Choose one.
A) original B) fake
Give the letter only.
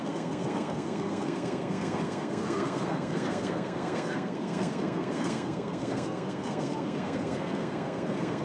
B